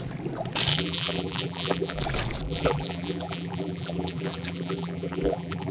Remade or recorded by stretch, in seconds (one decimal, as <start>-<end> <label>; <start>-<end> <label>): 0.0-0.7 recorded; 0.7-2.0 remade; 2.0-2.4 recorded; 2.4-5.7 remade